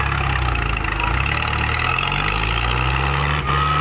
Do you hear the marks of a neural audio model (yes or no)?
no